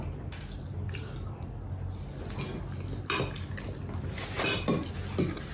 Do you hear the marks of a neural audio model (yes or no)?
no